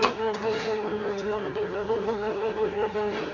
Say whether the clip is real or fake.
fake